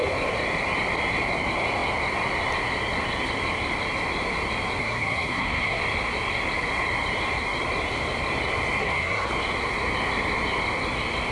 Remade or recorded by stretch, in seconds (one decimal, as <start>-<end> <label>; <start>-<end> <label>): 0.0-4.8 recorded; 4.8-5.8 remade; 5.8-8.8 recorded; 8.8-9.3 remade; 9.3-11.3 recorded